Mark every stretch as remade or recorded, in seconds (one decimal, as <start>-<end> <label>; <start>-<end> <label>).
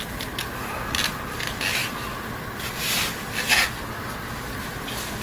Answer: 0.0-5.2 recorded